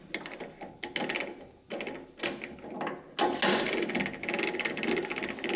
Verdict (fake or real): real